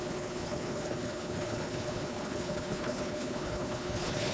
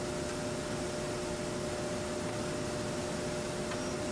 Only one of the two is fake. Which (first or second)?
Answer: first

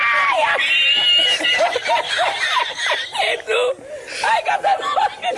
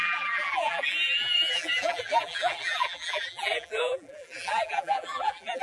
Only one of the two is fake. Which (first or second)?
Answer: second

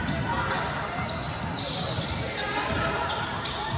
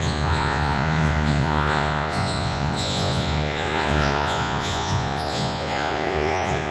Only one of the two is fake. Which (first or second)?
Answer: second